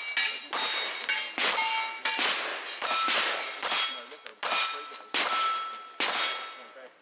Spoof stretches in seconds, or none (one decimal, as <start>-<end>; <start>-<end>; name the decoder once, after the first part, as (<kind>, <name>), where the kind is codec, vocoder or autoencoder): none